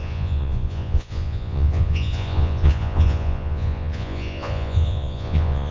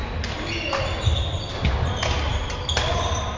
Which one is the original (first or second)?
second